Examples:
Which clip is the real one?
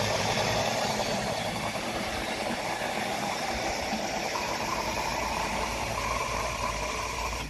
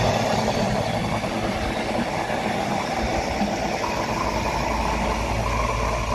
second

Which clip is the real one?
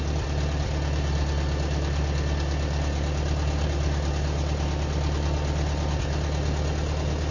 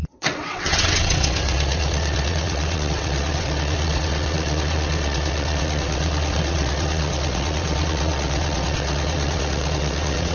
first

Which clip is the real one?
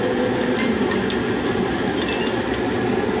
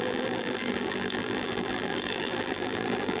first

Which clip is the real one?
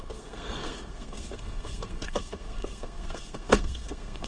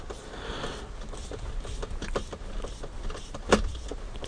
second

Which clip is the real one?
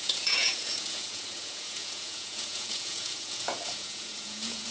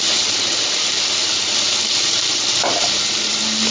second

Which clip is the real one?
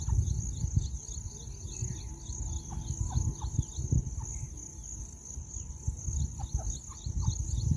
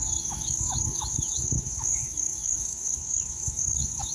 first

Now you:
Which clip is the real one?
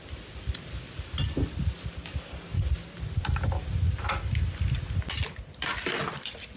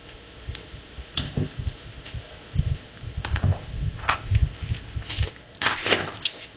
first